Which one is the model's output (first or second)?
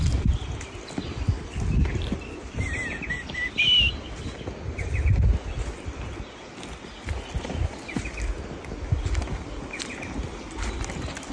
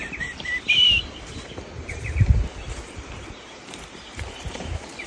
second